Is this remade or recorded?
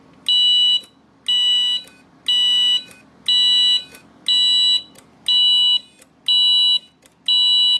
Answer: recorded